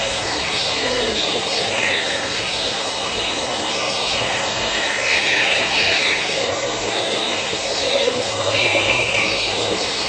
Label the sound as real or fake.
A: fake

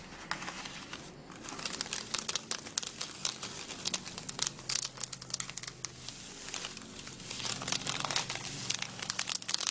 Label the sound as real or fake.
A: real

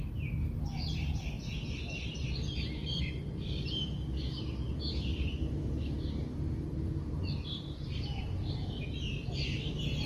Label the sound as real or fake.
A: real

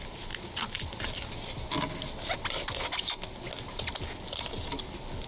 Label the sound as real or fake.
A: real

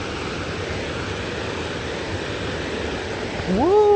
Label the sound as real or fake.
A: real